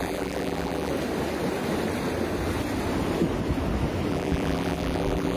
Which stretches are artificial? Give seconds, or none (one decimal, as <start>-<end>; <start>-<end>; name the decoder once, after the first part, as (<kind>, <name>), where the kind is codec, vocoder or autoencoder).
0.0-0.9 (vocoder, BigVGAN v2); 4.1-5.4